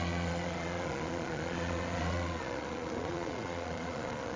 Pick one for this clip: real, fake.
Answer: fake